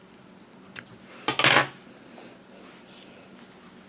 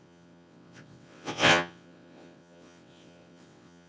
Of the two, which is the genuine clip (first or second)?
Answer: first